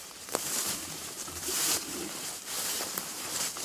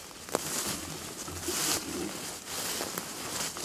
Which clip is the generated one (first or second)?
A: first